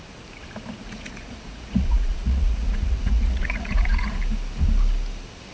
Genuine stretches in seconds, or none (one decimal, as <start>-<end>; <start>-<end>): 0.0-0.8; 4.1-5.5

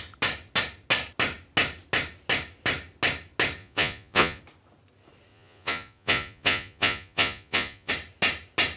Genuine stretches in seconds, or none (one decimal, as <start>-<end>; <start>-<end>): 0.0-3.6; 4.4-5.3; 7.9-8.8

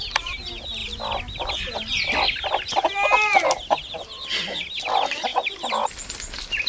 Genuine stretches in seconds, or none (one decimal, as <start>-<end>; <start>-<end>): 0.0-6.7

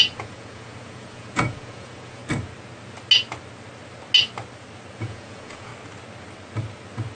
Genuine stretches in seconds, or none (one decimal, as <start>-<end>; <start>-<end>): 2.2-5.0; 5.7-7.2